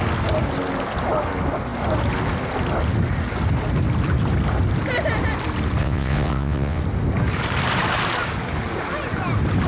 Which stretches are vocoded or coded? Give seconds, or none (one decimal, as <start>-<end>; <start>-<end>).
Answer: 5.8-6.8